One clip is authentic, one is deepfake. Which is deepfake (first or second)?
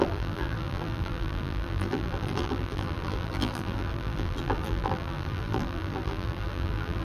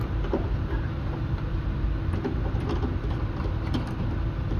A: first